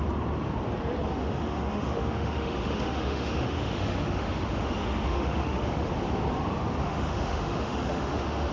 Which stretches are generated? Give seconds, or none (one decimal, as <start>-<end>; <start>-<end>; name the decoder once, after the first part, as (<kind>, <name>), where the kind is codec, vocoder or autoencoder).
1.2-5.9 (autoencoder, DAC-VAE); 6.8-8.5